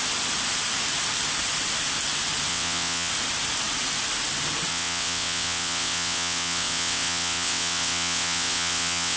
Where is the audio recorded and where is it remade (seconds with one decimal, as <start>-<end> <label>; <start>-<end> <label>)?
0.0-2.5 recorded; 2.5-3.1 remade; 3.1-4.7 recorded; 4.7-9.2 remade